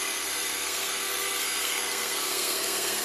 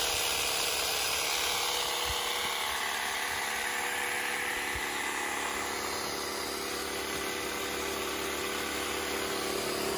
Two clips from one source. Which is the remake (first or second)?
first